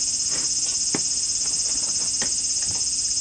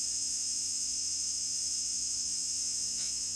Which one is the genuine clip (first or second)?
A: first